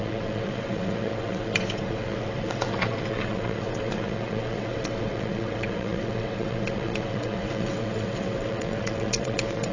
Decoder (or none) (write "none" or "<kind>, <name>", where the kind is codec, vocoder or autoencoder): vocoder, WaveNeXt